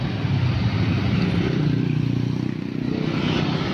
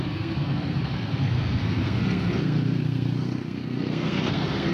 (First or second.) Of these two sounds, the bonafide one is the first